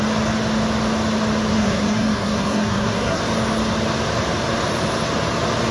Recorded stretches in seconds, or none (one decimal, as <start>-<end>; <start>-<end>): 0.0-1.5; 3.2-5.7